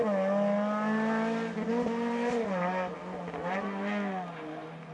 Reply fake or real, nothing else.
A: real